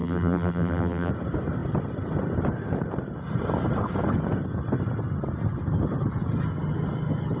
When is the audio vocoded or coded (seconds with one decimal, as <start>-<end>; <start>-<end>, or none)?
0.0-1.1